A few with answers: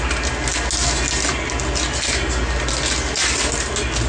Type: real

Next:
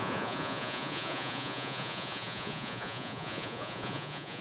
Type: fake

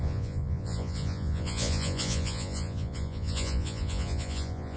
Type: fake